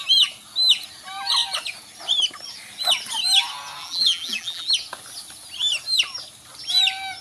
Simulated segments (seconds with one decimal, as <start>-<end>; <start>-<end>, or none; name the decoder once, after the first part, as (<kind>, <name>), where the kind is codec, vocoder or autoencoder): 3.8-4.7 (vocoder, BigVGAN v2)